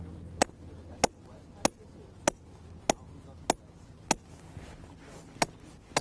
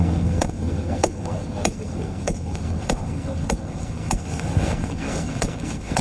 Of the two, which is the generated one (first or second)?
second